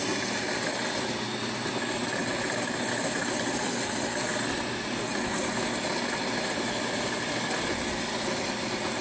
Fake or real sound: real